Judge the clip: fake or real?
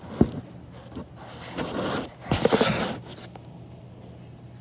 real